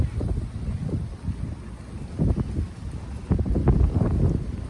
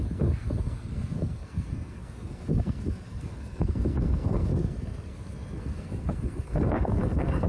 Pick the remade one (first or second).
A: second